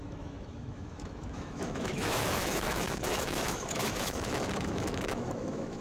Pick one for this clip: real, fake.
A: fake